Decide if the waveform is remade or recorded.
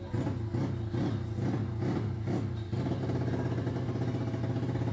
recorded